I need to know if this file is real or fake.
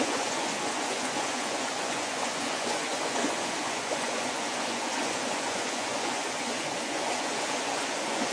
fake